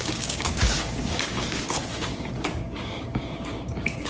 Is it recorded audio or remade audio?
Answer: remade